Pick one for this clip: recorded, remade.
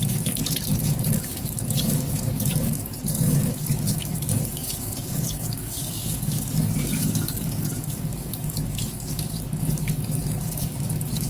remade